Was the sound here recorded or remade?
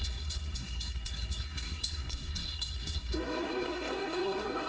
remade